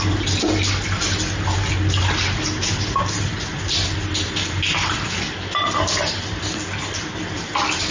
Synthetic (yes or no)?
no